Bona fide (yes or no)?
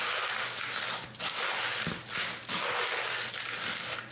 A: yes